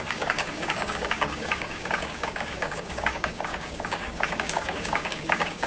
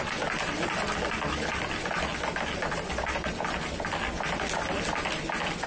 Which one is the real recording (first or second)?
second